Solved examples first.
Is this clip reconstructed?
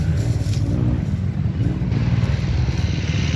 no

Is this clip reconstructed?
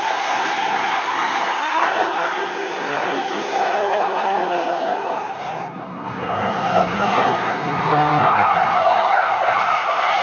yes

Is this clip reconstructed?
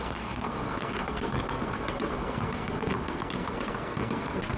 yes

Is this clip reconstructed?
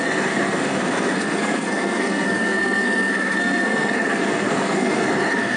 yes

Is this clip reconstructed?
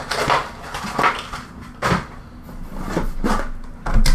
no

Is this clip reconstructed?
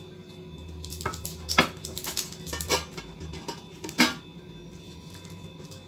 no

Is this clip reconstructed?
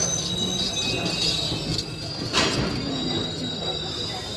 no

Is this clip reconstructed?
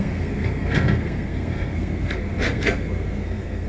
yes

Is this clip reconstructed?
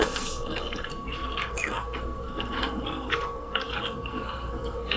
yes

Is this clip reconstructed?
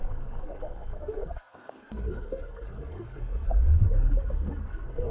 yes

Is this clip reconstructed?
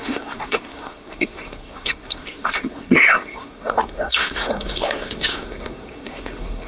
yes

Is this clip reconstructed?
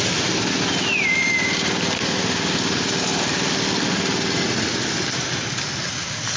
no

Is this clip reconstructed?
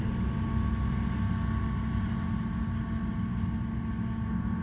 no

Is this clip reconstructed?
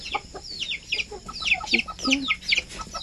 no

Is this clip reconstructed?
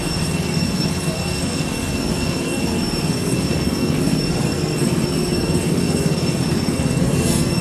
yes